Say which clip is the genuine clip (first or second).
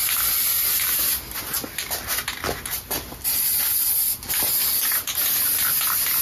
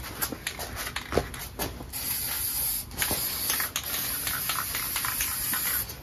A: second